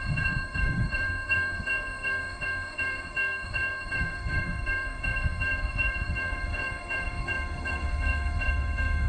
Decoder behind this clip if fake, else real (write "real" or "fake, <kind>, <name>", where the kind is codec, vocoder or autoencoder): fake, autoencoder, DAC-VAE